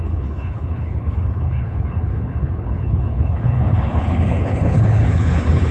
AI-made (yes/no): yes